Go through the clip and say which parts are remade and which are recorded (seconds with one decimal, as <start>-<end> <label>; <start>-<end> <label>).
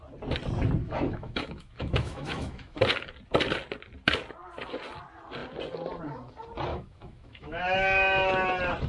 0.0-0.8 recorded; 0.8-2.8 remade; 2.8-6.7 recorded; 6.7-8.3 remade; 8.3-8.9 recorded